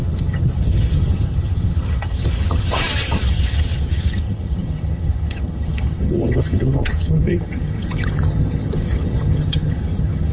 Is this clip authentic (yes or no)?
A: no